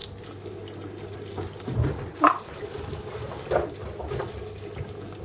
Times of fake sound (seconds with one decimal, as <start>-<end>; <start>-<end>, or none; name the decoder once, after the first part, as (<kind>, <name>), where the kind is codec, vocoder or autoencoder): none